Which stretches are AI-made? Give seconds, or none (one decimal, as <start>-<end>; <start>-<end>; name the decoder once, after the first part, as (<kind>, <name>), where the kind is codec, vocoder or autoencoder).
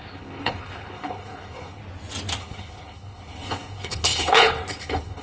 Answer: 0.0-1.8 (codec, HILCodec); 2.4-5.2